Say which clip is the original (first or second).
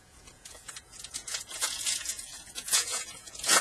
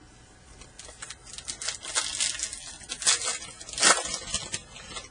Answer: second